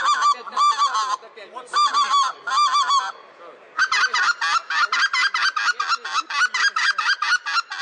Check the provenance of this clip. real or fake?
real